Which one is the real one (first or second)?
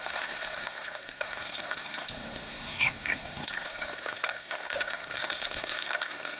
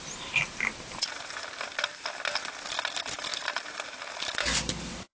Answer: second